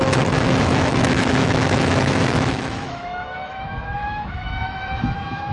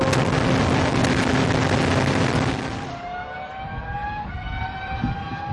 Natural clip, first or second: second